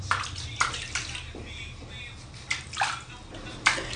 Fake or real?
real